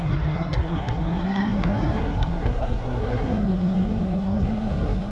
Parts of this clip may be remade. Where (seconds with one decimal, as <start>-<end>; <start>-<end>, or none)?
0.0-5.1